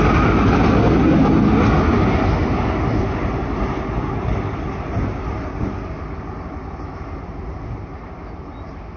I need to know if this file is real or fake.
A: real